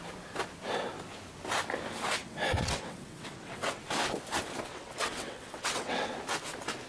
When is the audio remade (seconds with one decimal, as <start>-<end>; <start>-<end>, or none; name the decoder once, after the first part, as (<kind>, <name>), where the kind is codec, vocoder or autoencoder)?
2.2-3.8 (vocoder, WaveNeXt); 4.7-6.1